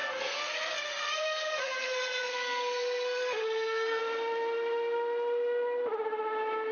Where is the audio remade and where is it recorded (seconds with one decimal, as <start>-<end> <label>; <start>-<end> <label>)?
0.0-4.0 remade; 4.0-6.7 recorded